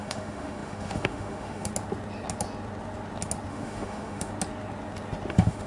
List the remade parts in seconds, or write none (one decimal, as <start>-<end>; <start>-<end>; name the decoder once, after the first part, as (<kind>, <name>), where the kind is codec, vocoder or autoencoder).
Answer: 0.0-1.7 (autoencoder, DAC-VAE); 3.5-4.3; 5.3-5.7